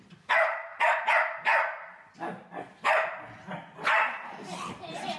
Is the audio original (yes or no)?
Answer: yes